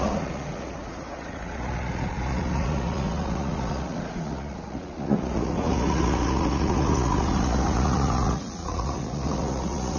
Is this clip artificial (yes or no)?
yes